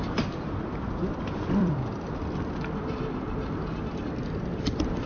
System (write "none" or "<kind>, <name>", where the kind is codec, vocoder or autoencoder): vocoder, BigVGAN v2